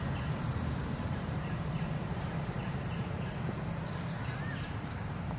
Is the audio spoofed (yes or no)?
yes